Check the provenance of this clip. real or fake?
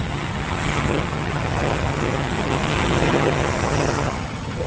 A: fake